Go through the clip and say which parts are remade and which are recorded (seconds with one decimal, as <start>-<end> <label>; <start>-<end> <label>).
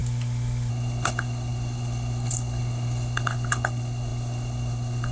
0.0-0.7 recorded; 0.7-5.1 remade